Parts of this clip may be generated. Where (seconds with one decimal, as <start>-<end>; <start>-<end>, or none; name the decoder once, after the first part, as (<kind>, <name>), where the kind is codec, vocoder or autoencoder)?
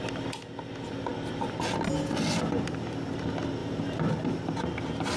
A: 3.6-4.6 (vocoder, BigVGAN v2)